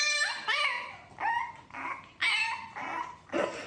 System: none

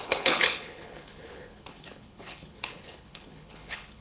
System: codec, HILCodec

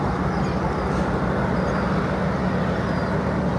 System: none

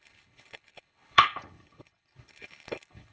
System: codec, HILCodec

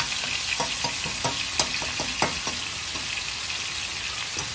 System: none